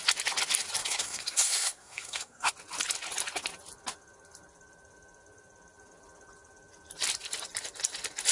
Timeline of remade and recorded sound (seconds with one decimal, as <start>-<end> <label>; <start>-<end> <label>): 0.0-0.8 recorded; 0.8-2.5 remade; 2.5-8.3 recorded